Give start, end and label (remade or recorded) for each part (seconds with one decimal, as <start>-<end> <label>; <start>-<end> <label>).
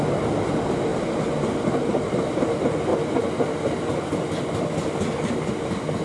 0.0-6.0 recorded